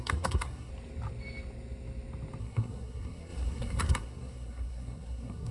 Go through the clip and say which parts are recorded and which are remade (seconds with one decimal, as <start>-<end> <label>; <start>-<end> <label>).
0.0-0.7 remade; 0.7-2.4 recorded; 2.4-5.5 remade